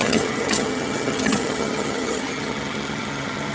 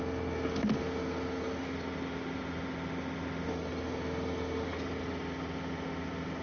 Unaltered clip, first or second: second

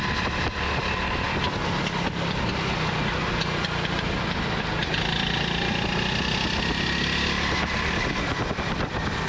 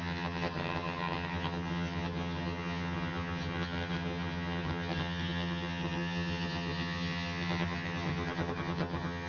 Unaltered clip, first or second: first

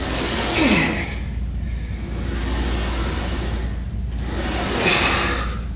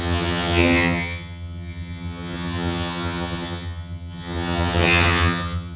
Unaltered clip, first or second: first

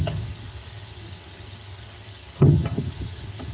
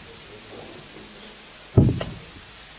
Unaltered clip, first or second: second